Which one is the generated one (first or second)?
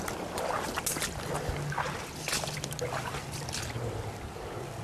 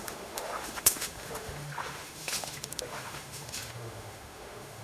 second